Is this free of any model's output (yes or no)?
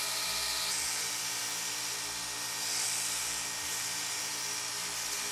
yes